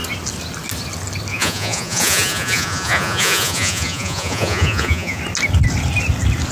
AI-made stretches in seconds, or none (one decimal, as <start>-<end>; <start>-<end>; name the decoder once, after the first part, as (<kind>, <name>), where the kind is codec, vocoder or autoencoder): 1.3-5.2 (vocoder, Vocos)